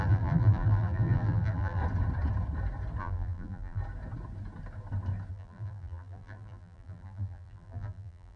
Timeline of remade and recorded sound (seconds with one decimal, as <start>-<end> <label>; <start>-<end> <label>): 0.0-1.8 remade; 1.8-3.0 recorded; 3.0-3.8 remade; 3.8-5.3 recorded; 5.3-8.4 remade